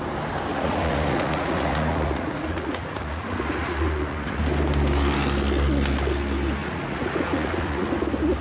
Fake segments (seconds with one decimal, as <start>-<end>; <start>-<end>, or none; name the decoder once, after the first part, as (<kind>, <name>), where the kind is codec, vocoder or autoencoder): 0.5-4.4 (vocoder, Vocos); 6.6-7.9